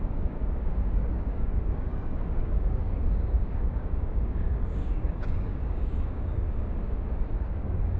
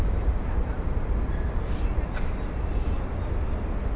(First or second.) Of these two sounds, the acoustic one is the second